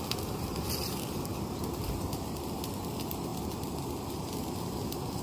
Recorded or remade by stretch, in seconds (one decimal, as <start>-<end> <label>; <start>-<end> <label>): 0.0-5.2 recorded